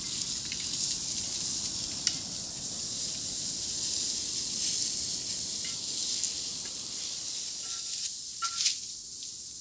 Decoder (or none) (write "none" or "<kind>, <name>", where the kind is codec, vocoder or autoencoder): none